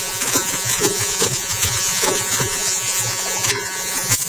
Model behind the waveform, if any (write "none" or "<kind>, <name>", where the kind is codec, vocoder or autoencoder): vocoder, Vocos